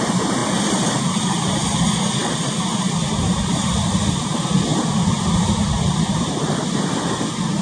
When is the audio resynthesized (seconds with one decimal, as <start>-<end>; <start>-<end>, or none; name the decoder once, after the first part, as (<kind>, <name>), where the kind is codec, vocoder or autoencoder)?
4.7-6.9 (vocoder, BigVGAN v2)